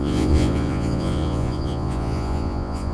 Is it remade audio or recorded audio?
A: remade